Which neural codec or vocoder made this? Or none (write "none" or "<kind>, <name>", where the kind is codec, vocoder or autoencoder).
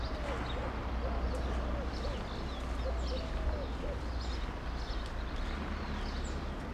none